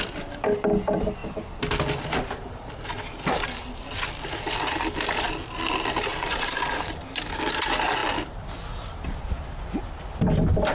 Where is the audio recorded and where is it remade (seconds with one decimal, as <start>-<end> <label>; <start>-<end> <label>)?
0.0-6.1 recorded; 6.1-6.8 remade; 6.8-8.0 recorded; 8.0-10.7 remade